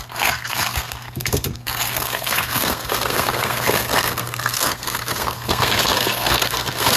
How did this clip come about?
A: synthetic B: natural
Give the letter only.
A